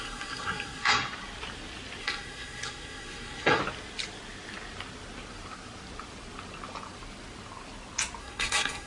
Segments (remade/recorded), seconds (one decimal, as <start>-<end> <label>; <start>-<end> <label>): 0.0-1.0 remade; 1.0-2.0 recorded; 2.0-3.6 remade; 3.6-8.2 recorded; 8.2-8.9 remade